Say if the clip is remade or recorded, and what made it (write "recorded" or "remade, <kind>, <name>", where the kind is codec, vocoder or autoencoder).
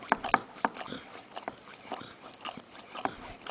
recorded